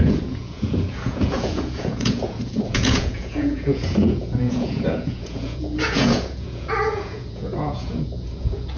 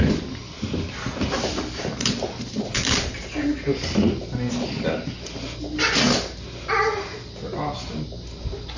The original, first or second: second